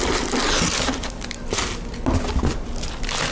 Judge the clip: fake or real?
real